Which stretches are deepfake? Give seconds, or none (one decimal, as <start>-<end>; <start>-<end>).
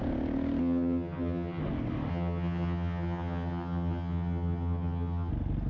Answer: 0.6-1.6; 2.1-5.3